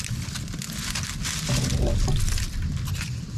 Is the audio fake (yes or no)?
no